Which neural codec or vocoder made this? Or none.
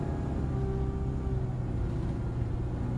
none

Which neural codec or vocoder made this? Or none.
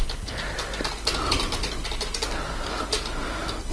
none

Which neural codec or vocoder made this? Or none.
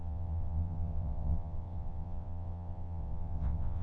vocoder, WaveNeXt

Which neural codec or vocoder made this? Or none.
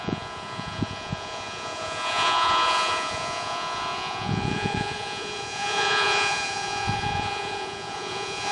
vocoder, Vocos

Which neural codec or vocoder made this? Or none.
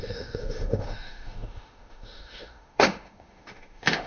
autoencoder, DAC-VAE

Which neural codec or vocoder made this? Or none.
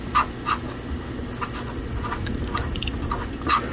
none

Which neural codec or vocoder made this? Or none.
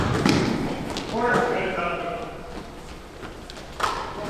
none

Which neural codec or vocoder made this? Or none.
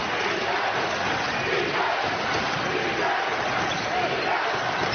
none